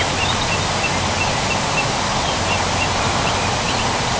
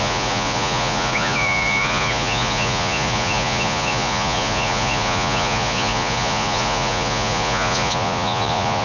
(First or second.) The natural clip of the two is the first